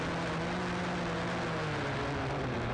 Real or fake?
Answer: real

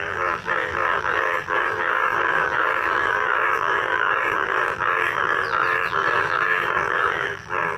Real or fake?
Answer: fake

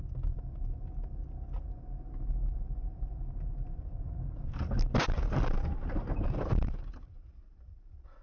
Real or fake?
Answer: real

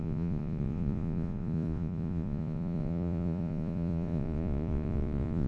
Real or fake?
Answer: fake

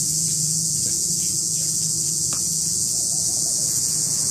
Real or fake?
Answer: fake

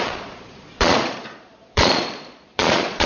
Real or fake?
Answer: fake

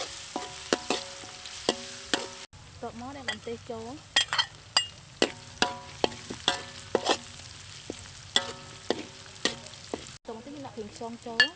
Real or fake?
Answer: real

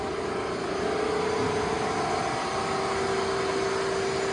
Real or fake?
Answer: real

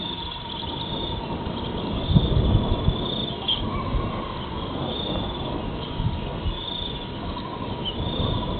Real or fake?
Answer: real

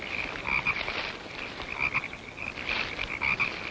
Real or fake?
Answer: real